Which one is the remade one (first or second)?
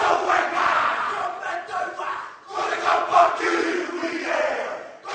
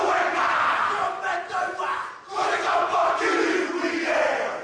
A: first